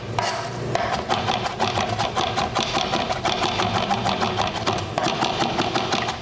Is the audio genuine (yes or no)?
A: yes